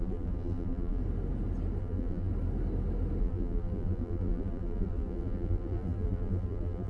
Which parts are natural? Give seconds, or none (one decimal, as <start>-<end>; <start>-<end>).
1.0-1.8; 2.3-3.2

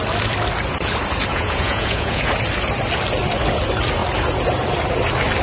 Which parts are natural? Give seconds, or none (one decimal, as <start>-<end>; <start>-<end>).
0.0-1.3; 2.3-5.4